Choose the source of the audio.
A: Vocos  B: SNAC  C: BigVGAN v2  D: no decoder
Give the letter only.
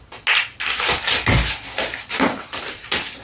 D